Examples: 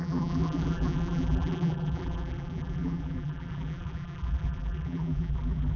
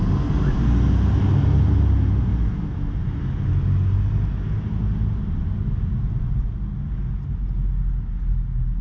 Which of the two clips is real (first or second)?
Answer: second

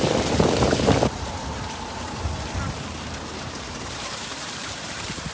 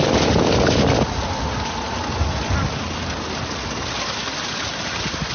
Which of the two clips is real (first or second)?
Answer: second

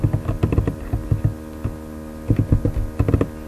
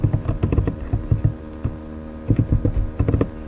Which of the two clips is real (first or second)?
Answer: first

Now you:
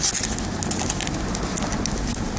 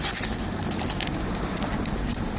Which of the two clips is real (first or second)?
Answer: first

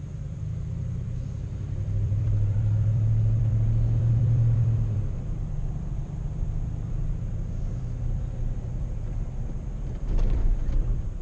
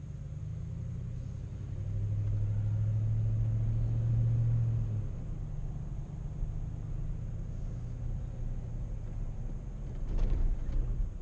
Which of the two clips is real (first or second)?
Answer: second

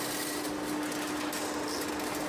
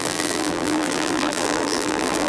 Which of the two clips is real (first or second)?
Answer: first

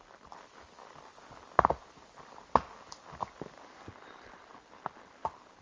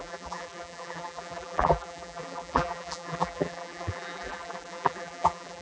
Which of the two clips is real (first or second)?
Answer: first